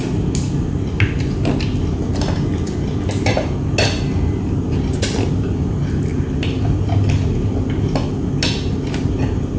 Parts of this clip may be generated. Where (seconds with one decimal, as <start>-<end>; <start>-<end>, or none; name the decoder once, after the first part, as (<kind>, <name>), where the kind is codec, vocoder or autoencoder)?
none